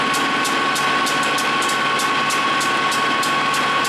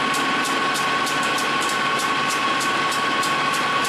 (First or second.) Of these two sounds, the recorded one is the first